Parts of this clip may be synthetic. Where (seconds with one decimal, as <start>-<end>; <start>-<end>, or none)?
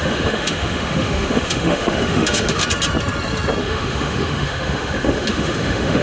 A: 0.0-2.6; 3.6-6.0